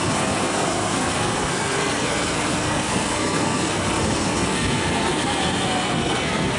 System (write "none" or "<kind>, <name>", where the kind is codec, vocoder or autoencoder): codec, SNAC